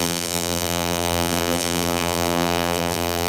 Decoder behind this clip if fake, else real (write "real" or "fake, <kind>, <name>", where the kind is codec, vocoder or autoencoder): fake, vocoder, BigVGAN v2